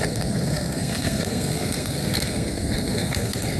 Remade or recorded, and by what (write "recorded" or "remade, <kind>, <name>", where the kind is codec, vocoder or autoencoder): remade, codec, SNAC